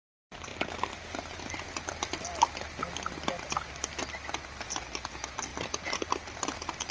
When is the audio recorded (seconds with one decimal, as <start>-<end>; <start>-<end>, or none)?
0.0-6.9